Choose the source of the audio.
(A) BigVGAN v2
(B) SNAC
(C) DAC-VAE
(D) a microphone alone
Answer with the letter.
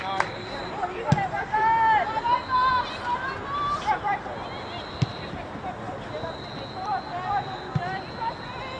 D